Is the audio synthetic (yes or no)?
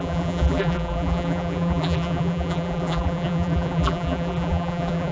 yes